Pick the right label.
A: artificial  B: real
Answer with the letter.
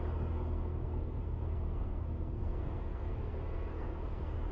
A